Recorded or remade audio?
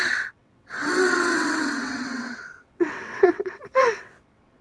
remade